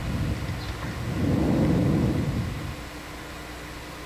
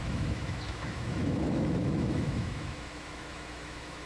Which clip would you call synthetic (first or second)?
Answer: second